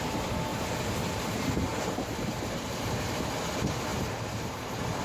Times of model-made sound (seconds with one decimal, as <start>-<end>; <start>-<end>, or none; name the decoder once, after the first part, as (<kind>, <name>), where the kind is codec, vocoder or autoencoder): 0.5-1.0 (vocoder, BigVGAN v2); 1.7-3.3; 3.9-5.0